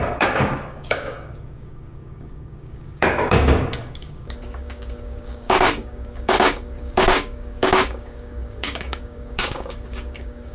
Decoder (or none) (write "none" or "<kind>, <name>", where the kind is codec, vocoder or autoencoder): codec, DAC